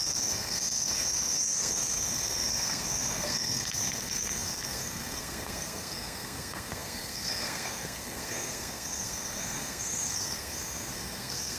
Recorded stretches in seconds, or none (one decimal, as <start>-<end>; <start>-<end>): none